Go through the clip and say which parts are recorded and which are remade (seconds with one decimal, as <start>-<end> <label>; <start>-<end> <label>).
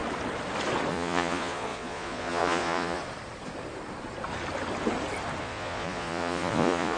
0.0-0.9 recorded; 0.9-3.0 remade; 3.0-5.4 recorded; 5.4-7.0 remade